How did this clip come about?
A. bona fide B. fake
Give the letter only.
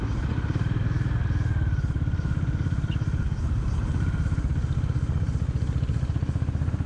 A